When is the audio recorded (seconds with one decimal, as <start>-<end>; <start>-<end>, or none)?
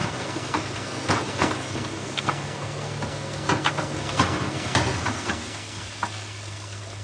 none